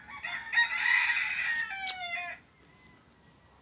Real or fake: real